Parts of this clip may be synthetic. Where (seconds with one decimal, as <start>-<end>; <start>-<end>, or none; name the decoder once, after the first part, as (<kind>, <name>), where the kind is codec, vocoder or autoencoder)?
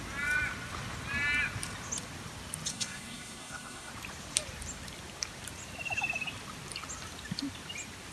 2.7-3.9 (codec, SNAC)